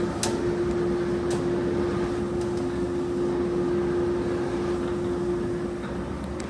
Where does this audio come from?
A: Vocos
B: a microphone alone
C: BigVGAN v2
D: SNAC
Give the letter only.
B